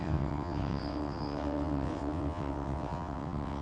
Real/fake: fake